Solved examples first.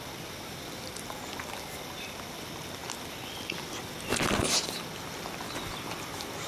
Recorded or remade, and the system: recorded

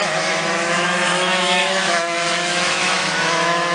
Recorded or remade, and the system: remade, autoencoder, DAC-VAE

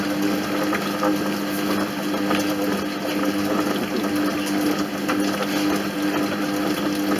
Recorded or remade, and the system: recorded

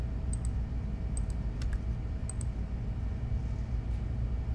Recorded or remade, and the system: recorded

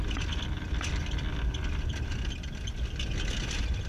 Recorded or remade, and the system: recorded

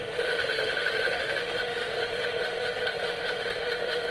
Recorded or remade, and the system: remade, autoencoder, DAC-VAE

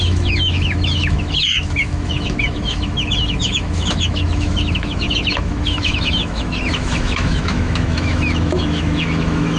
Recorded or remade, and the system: remade, autoencoder, DAC-VAE